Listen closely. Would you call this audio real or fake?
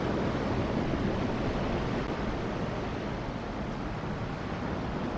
real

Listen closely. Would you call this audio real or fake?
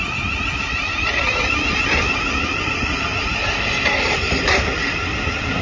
real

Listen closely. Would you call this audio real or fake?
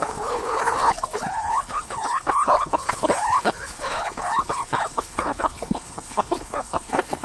fake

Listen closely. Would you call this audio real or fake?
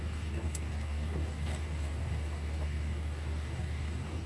fake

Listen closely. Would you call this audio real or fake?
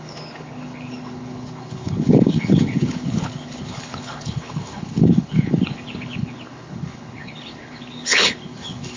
fake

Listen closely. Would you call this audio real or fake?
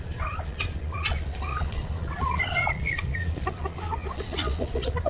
fake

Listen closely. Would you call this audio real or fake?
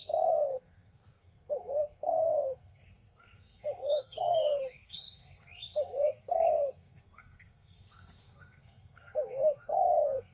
fake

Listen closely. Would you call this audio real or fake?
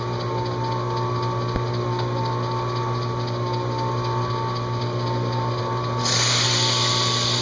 real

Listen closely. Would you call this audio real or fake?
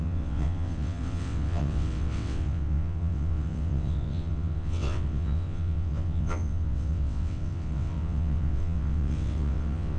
fake